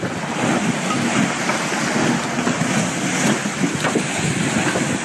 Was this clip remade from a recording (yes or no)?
no